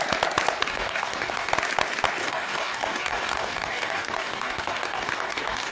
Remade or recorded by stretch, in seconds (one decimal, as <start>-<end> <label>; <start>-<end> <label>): 0.0-0.7 recorded; 0.7-1.5 remade; 1.5-2.2 recorded; 2.2-5.7 remade

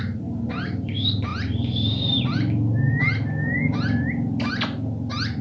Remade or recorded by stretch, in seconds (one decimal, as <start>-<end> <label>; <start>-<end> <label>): 0.0-5.4 recorded